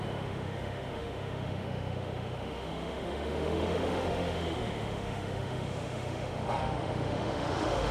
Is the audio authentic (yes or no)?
no